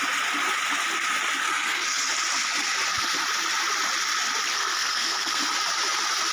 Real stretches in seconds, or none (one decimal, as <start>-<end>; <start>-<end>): 0.0-1.4; 2.0-4.5; 5.4-6.3